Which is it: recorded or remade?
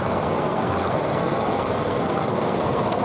remade